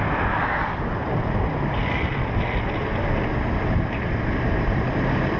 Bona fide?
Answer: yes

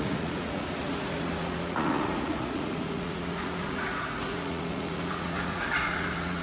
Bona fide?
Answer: no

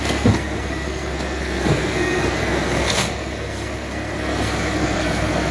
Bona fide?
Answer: no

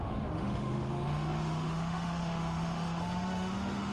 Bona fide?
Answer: no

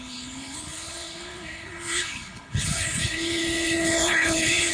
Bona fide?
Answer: no